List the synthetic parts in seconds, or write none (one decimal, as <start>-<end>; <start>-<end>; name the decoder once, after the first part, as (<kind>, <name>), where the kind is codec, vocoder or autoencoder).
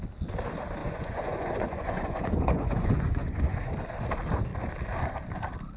0.8-3.7 (vocoder, Vocos)